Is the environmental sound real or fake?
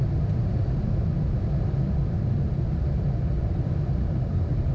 fake